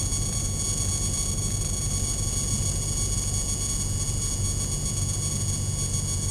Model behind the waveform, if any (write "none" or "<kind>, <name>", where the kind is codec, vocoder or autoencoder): none